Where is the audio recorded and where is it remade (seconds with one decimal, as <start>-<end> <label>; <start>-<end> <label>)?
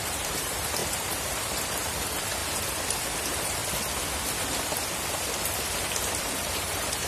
0.0-2.4 remade; 2.4-3.2 recorded; 3.2-3.6 remade; 3.6-6.2 recorded; 6.2-7.1 remade